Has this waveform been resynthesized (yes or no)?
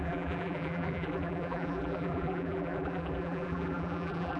yes